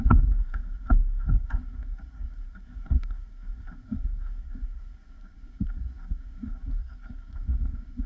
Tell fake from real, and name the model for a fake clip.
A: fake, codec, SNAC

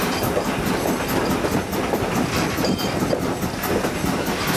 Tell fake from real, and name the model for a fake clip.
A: real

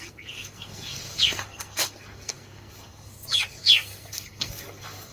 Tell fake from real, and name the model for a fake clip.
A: fake, codec, SNAC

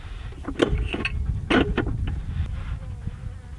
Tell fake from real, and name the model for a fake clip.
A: real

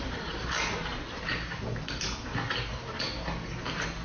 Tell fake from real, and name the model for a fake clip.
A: real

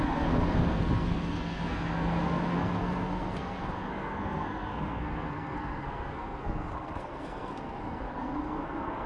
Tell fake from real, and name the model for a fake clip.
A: fake, codec, SNAC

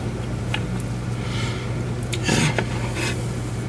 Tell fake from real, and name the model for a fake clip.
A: real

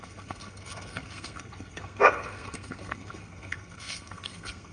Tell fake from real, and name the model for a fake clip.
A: fake, codec, SNAC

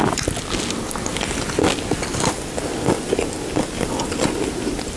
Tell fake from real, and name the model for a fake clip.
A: real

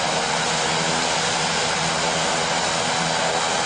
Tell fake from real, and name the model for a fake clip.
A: real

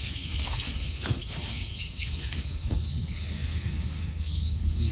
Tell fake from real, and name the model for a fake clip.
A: fake, codec, SNAC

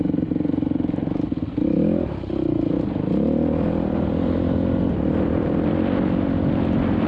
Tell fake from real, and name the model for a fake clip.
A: real